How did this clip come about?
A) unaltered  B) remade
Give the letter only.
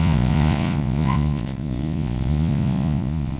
B